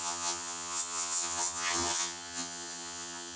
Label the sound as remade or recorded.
remade